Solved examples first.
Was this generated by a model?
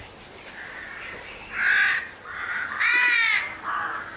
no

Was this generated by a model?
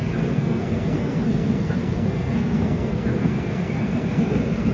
yes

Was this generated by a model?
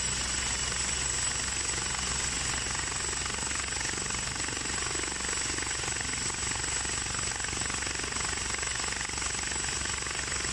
no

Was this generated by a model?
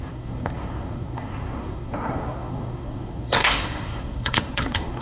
yes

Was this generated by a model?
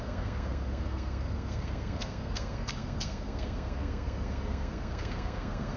yes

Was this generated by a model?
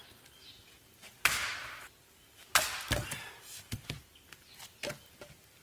no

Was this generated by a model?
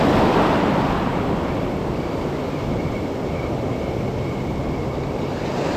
no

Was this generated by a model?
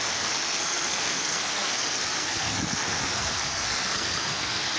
yes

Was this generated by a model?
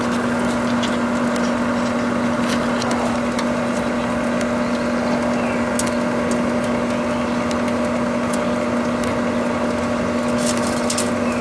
no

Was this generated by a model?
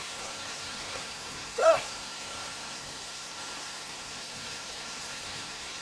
yes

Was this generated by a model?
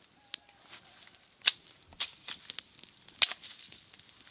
no